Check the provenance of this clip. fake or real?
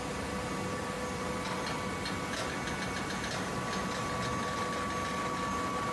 real